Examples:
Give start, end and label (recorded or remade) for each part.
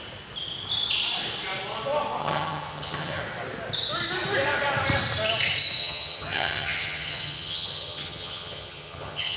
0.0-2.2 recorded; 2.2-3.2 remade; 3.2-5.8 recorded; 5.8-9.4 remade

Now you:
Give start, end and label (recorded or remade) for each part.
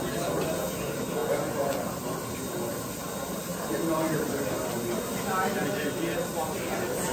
0.0-7.1 recorded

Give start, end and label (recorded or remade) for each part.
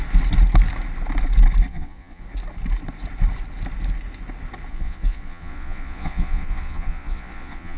0.0-1.7 recorded; 1.7-2.2 remade; 2.2-4.7 recorded; 4.7-7.8 remade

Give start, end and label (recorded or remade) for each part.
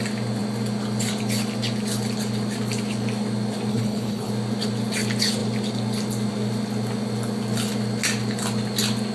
0.0-3.7 recorded; 3.7-4.3 remade; 4.3-9.1 recorded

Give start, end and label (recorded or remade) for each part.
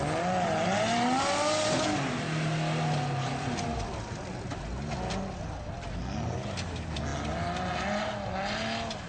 0.0-9.1 recorded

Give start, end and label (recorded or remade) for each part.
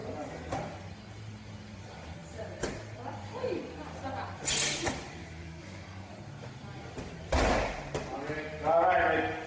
0.0-5.2 recorded; 5.2-6.1 remade; 6.1-9.5 recorded